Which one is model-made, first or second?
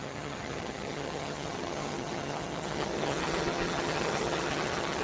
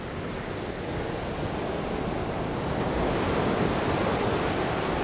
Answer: first